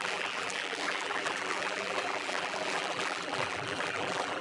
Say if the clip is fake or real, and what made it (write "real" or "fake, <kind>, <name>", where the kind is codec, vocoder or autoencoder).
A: fake, vocoder, BigVGAN v2